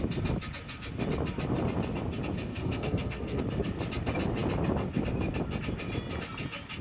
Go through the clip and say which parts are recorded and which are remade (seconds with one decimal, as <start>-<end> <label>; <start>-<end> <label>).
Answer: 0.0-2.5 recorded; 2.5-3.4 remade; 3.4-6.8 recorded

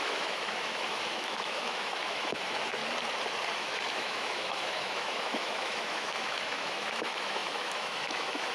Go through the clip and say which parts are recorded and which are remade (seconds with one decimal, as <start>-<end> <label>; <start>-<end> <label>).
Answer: 0.0-2.8 remade; 2.8-3.6 recorded; 3.6-8.5 remade

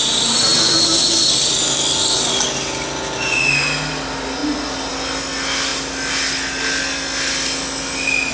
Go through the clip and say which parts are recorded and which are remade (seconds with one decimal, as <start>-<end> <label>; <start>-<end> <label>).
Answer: 0.0-8.3 recorded

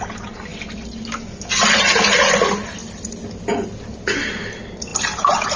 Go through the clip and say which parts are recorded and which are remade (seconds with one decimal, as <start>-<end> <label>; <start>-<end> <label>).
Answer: 0.0-5.6 recorded

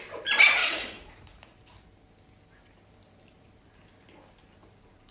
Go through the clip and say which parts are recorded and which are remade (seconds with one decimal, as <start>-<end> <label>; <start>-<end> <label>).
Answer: 0.0-0.6 recorded; 0.6-1.6 remade; 1.6-5.1 recorded

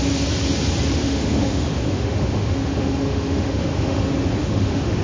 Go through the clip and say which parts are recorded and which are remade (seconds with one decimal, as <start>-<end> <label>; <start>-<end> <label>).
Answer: 0.0-1.0 recorded; 1.0-4.0 remade; 4.0-4.4 recorded; 4.4-5.0 remade